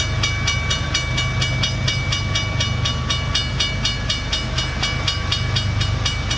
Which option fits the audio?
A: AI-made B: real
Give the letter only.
B